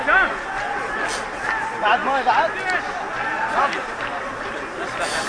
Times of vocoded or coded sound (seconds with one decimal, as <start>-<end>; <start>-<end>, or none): 3.3-4.5